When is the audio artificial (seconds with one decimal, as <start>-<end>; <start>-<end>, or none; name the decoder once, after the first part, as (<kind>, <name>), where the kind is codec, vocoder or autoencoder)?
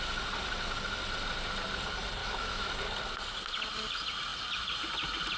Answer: 2.2-2.7 (autoencoder, DAC-VAE)